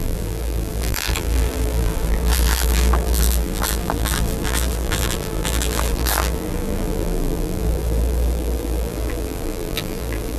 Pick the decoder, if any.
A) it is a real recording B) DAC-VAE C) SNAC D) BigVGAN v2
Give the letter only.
D